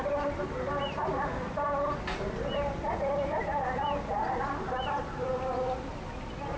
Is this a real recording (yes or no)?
yes